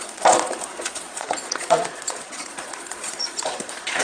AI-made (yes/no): yes